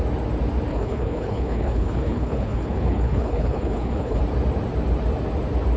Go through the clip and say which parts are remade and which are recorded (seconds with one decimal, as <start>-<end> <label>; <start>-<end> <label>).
0.0-0.7 recorded; 0.7-4.2 remade; 4.2-5.8 recorded

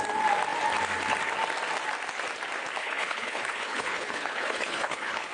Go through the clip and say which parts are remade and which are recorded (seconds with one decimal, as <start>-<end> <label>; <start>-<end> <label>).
0.0-2.8 recorded; 2.8-5.3 remade

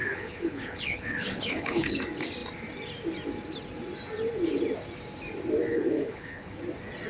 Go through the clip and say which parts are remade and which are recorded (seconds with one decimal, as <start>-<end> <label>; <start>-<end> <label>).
0.0-2.0 remade; 2.0-5.7 recorded; 5.7-6.6 remade; 6.6-7.1 recorded

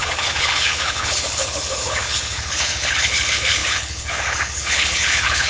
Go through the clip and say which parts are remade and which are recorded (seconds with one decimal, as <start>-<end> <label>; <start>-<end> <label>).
0.0-5.5 remade